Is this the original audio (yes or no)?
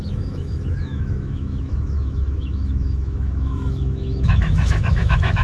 no